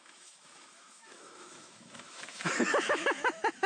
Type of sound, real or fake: fake